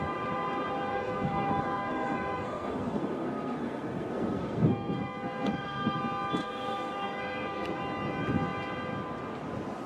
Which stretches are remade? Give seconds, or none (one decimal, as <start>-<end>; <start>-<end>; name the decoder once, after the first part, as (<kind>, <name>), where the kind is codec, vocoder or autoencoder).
0.9-6.0 (codec, SNAC); 6.4-7.8